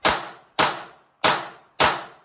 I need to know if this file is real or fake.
real